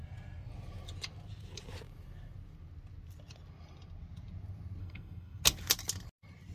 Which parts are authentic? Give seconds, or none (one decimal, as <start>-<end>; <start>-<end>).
0.0-4.8; 5.4-6.5